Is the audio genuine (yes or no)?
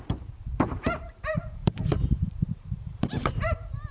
no